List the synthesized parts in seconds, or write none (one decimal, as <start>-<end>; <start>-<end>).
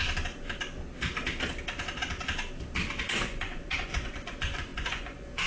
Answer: 3.0-5.5